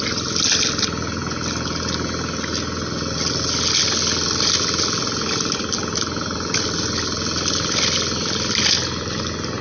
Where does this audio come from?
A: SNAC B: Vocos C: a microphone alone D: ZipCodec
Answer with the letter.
C